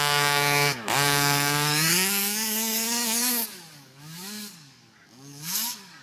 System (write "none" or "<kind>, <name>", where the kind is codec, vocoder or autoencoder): codec, DAC